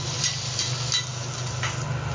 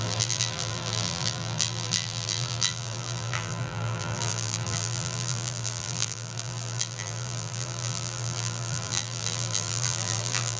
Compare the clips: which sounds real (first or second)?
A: first